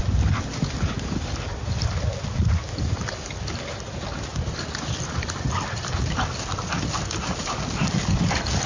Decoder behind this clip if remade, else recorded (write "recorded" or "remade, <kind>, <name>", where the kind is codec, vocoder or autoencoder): recorded